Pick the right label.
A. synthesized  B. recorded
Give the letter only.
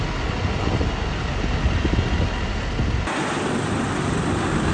B